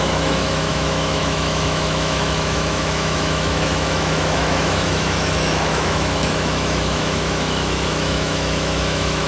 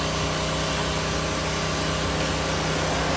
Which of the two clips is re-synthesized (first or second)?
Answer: first